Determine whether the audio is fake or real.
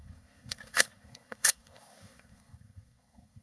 fake